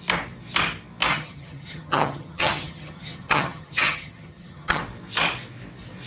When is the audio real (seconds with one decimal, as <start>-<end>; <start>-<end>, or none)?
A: 0.0-1.1; 4.8-6.1